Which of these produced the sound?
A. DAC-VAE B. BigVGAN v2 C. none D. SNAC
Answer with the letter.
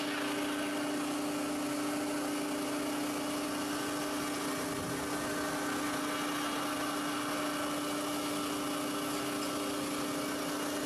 C